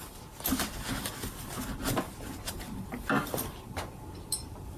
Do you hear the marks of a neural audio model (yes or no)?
no